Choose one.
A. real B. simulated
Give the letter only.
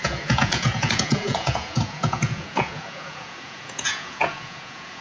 B